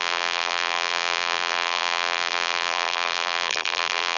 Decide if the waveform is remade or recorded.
remade